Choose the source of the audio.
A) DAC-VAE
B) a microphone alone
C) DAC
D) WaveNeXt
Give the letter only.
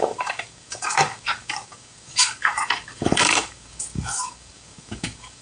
C